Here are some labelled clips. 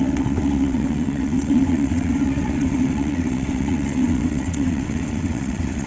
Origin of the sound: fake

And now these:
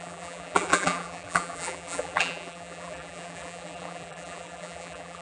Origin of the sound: fake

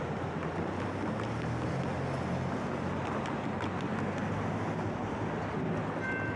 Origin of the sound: real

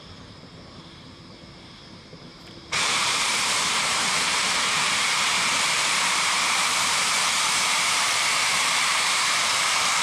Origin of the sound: fake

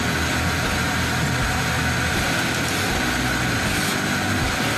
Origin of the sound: real